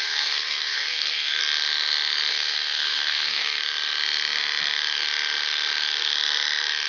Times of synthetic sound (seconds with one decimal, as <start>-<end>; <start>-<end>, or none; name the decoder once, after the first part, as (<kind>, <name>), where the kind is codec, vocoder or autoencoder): 0.0-1.4 (codec, SNAC); 2.3-3.6